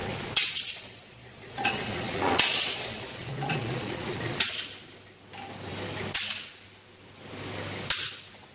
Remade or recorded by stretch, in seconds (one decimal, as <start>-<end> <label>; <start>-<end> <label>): 0.0-4.4 remade; 4.4-8.5 recorded